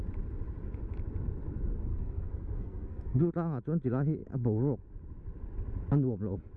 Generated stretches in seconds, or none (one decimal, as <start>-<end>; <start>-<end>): 1.9-3.3